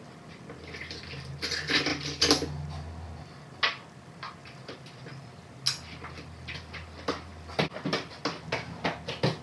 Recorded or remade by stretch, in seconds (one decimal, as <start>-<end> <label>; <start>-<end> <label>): 0.0-4.4 recorded; 4.4-5.0 remade; 5.0-9.4 recorded